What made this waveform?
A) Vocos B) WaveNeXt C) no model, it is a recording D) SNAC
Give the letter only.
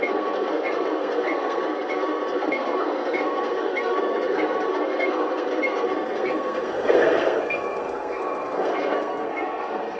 D